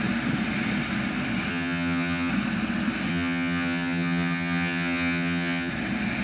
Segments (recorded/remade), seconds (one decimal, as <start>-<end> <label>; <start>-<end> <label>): 0.0-1.5 recorded; 1.5-2.3 remade; 2.3-3.1 recorded; 3.1-5.7 remade; 5.7-6.2 recorded